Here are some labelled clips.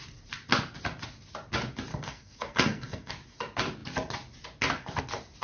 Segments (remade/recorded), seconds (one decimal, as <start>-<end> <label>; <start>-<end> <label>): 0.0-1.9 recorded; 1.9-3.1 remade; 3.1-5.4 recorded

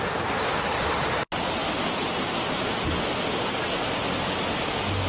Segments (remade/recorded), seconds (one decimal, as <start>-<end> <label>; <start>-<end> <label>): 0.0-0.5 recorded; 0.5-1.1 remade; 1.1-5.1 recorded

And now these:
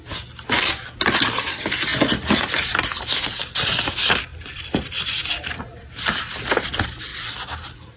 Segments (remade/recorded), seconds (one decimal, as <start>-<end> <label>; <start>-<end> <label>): 0.0-1.9 recorded; 1.9-2.7 remade; 2.7-4.3 recorded; 4.3-5.6 remade; 5.6-7.1 recorded; 7.1-8.0 remade